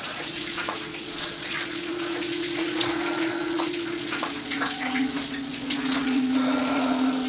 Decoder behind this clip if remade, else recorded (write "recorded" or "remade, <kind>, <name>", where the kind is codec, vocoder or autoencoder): remade, vocoder, Vocos